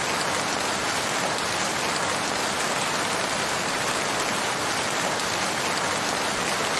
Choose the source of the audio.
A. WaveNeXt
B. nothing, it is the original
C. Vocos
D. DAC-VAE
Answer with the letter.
B